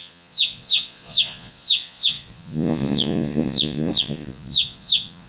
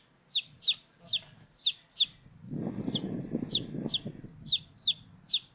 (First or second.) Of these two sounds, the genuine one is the second